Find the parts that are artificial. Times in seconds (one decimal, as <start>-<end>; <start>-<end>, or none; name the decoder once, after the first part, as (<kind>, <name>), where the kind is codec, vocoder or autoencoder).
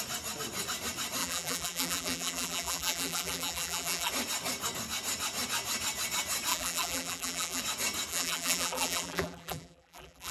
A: 1.2-4.1 (vocoder, BigVGAN v2); 6.5-7.6; 8.1-10.3